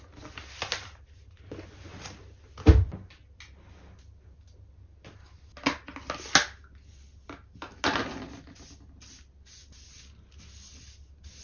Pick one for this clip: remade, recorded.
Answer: recorded